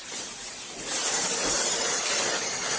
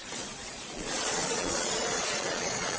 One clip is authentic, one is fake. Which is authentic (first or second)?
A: first